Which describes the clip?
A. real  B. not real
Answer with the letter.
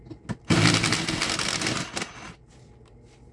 A